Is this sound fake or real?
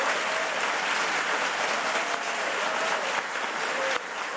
real